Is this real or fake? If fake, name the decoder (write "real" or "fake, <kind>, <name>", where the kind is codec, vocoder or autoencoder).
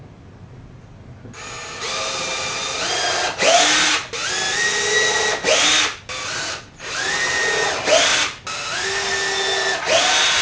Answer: real